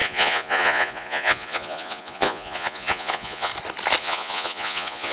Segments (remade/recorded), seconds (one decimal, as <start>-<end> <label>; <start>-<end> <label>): 0.0-3.5 remade; 3.5-4.0 recorded; 4.0-5.1 remade

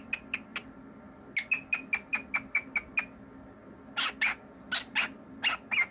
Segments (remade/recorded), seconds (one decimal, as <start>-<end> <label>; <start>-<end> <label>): 0.0-5.9 recorded

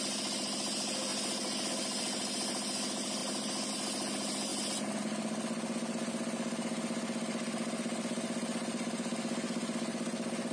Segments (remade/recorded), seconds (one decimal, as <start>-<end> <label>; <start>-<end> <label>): 0.0-10.5 recorded